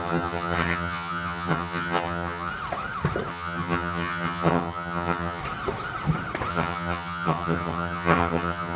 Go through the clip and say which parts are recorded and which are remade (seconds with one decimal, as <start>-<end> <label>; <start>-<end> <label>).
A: 0.0-2.5 remade; 2.5-3.3 recorded; 3.3-5.4 remade; 5.4-6.5 recorded; 6.5-8.8 remade